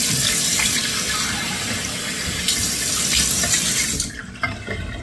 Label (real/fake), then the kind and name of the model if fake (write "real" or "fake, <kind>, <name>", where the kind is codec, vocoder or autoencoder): fake, vocoder, BigVGAN v2